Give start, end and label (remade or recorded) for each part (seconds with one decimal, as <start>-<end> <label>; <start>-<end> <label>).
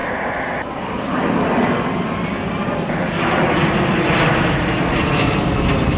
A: 0.0-6.0 recorded